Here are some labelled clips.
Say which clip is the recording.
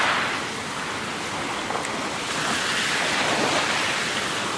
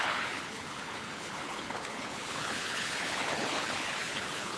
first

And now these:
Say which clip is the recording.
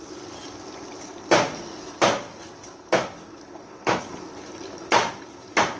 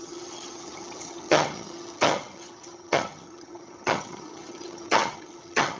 first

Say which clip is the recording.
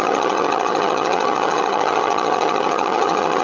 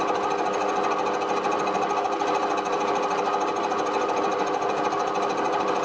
second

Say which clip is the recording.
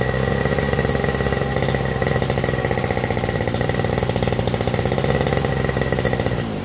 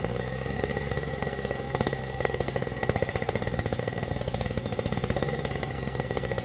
first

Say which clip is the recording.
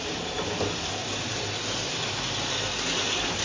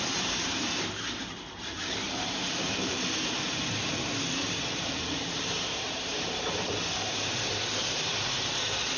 first